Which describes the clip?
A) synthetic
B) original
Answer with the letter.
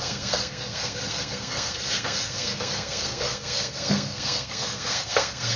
A